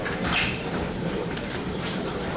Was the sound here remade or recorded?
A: remade